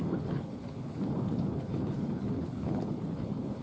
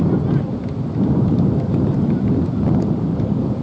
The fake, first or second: first